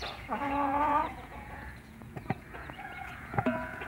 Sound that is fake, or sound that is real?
fake